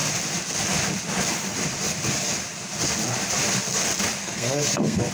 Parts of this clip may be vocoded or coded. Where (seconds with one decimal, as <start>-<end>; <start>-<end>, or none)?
4.2-5.1